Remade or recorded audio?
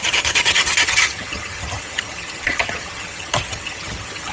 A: remade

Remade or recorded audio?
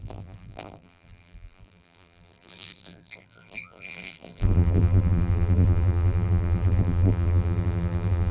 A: remade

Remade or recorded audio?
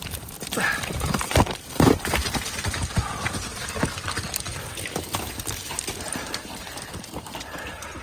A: remade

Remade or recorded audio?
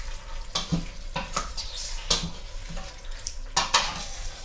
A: recorded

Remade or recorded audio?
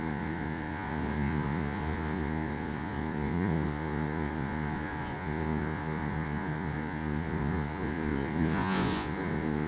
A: remade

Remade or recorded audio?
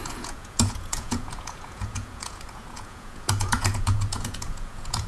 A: remade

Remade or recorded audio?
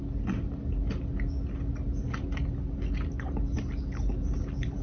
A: recorded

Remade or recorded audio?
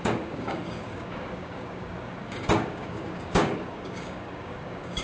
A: remade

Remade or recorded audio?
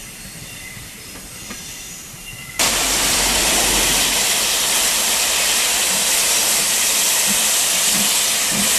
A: remade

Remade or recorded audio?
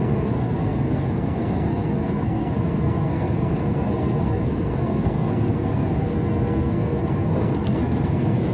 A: remade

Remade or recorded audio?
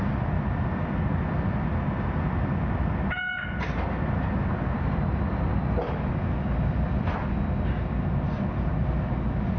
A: recorded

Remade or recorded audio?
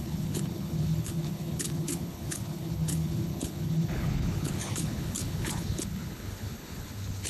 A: remade